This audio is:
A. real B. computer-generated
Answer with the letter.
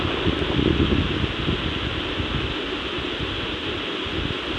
A